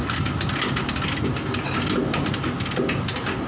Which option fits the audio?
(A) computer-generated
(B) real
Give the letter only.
B